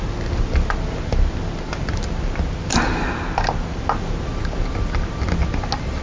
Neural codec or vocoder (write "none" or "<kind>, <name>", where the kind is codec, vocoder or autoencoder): none